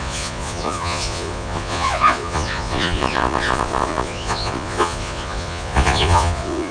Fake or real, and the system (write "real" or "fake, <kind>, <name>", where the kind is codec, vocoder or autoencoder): fake, vocoder, Vocos